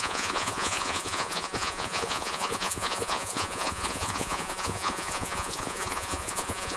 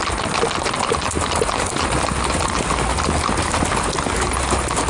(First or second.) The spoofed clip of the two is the first